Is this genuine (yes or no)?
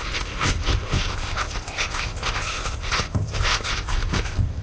no